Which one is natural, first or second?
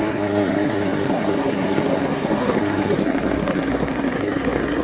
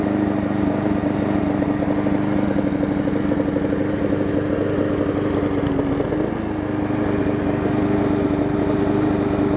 second